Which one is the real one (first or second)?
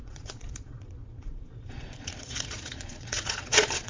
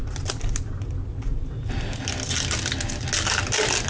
second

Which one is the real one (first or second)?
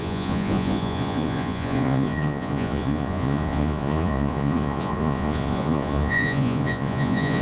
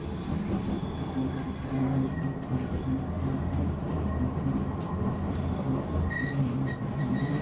second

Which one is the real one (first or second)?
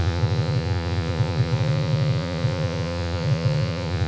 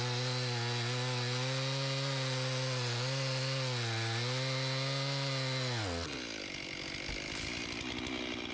second